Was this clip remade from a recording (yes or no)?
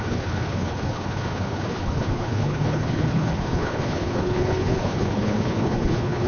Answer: yes